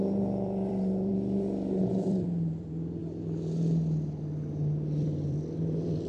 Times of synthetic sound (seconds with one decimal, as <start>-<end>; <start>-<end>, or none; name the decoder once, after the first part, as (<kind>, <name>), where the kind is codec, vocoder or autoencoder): 0.0-1.1 (vocoder, BigVGAN v2); 1.9-3.0; 5.0-6.1